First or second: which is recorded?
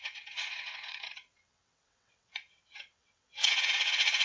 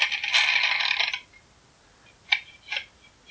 second